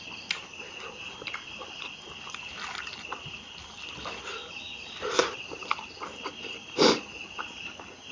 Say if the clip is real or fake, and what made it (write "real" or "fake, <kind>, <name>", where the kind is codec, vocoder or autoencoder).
real